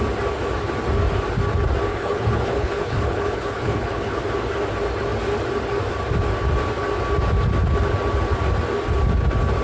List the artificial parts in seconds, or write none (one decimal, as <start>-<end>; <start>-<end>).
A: 1.9-4.2

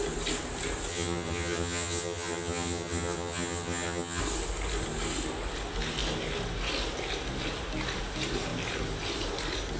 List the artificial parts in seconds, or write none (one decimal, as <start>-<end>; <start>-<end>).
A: 0.9-4.2

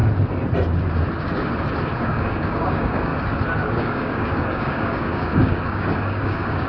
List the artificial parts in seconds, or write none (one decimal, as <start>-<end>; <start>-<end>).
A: 2.0-3.1; 3.7-6.7

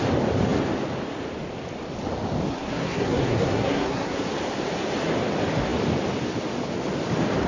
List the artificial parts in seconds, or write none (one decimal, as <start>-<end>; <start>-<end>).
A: 2.5-4.2

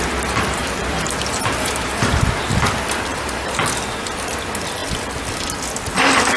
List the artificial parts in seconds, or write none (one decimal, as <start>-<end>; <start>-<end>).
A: 0.6-2.1; 3.1-3.6